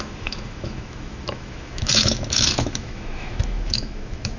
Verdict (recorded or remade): remade